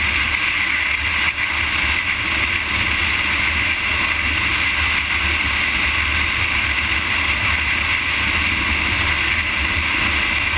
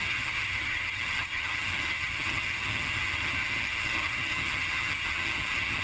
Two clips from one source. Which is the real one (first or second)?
first